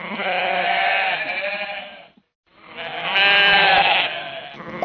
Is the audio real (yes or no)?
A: yes